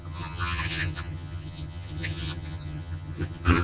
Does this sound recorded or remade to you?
remade